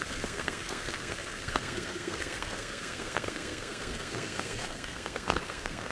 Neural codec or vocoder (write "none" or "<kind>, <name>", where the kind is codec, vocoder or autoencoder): codec, SNAC